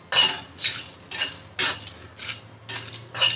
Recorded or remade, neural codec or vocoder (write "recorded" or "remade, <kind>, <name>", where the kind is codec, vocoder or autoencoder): recorded